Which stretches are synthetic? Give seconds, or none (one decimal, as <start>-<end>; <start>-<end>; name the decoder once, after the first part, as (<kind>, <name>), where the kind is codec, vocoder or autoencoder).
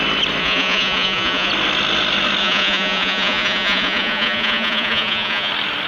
0.4-1.5 (vocoder, Vocos); 2.4-5.5